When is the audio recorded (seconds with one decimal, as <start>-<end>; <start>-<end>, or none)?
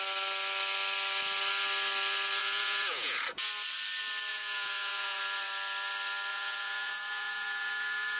0.0-2.4; 3.5-4.3; 5.2-6.3